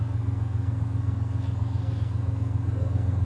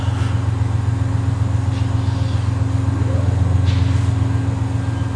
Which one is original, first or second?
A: second